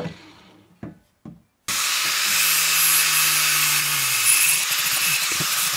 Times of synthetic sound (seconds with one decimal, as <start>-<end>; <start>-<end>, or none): 0.0-1.5; 5.0-5.8